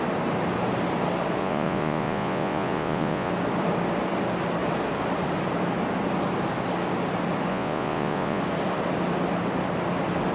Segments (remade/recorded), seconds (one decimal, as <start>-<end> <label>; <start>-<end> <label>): 0.0-1.4 recorded; 1.4-3.3 remade; 3.3-7.5 recorded; 7.5-8.4 remade; 8.4-10.3 recorded